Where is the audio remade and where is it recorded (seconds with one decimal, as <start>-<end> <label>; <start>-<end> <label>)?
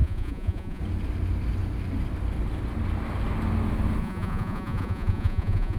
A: 0.0-0.8 remade; 0.8-4.0 recorded; 4.0-5.8 remade